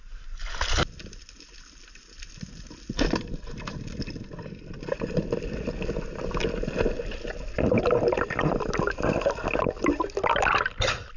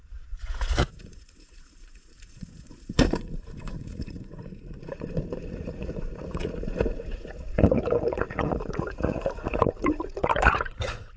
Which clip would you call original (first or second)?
first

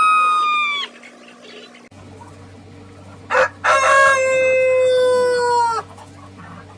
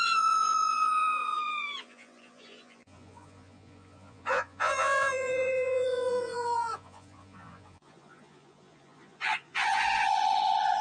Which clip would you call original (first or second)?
first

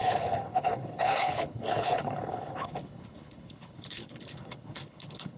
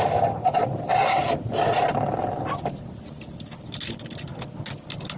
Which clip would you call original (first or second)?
second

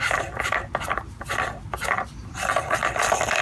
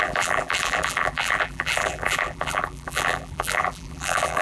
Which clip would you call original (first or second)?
first